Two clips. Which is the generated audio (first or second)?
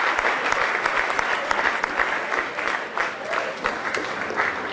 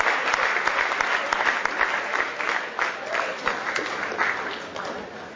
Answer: first